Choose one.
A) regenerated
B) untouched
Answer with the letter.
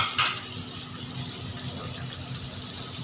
B